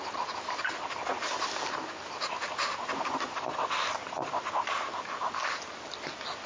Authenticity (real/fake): real